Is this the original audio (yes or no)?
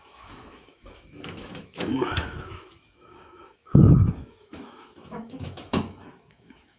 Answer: no